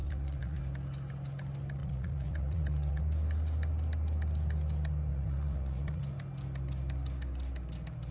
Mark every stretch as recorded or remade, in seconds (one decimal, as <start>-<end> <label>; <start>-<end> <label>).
0.0-0.6 remade; 0.6-1.8 recorded; 1.8-3.0 remade; 3.0-5.1 recorded; 5.1-6.0 remade; 6.0-8.1 recorded